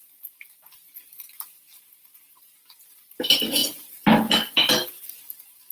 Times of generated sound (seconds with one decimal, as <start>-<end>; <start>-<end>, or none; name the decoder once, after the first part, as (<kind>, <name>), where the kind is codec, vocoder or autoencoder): none